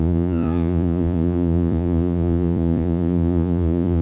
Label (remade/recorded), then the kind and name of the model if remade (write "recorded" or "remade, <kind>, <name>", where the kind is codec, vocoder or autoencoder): remade, vocoder, Vocos